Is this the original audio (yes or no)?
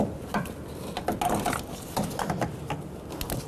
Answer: yes